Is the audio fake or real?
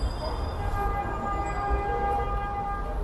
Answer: real